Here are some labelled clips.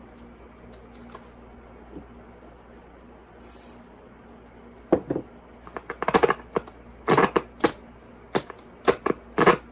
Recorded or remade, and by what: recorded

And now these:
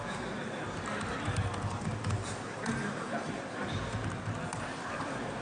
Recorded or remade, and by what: recorded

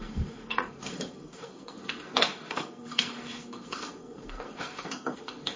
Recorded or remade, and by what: remade, codec, SNAC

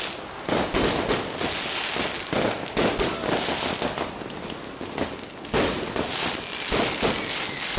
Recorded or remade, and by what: recorded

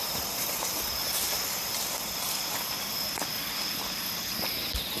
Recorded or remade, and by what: recorded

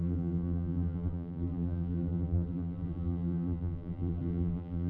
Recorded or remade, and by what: remade, vocoder, BigVGAN v2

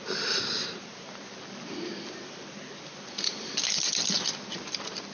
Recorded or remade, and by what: recorded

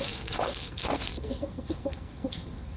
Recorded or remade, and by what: remade, codec, SNAC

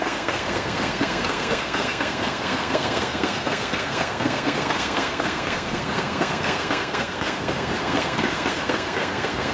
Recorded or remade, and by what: remade, codec, SNAC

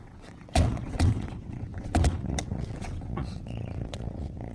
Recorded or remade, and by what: remade, vocoder, WaveNeXt